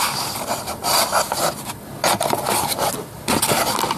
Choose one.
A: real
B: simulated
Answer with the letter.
A